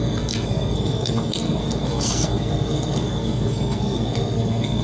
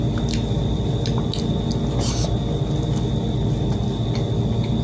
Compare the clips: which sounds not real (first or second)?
first